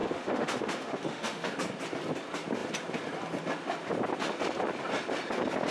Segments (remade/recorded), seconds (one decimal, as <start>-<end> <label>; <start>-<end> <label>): 0.0-1.5 remade; 1.5-5.7 recorded